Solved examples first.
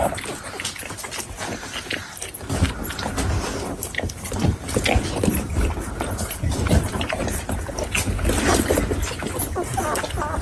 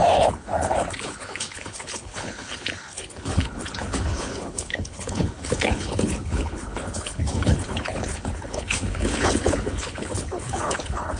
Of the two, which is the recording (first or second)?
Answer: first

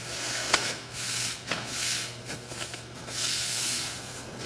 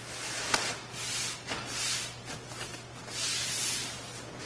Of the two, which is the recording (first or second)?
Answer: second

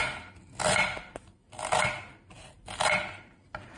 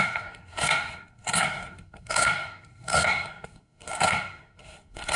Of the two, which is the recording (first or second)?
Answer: first